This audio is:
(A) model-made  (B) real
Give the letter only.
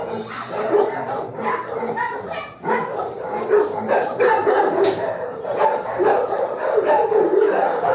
A